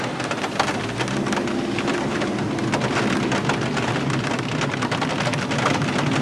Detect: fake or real real